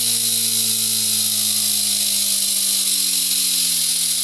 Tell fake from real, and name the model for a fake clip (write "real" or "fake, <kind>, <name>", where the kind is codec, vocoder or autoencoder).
real